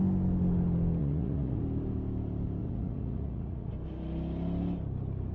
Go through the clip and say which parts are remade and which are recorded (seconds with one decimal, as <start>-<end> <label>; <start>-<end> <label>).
0.0-1.0 recorded; 1.0-1.6 remade; 1.6-2.6 recorded; 2.6-3.7 remade; 3.7-5.3 recorded